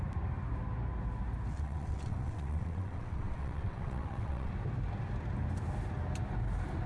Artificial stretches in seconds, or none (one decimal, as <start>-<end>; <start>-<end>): 1.5-4.5